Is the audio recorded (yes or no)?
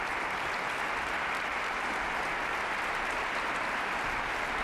yes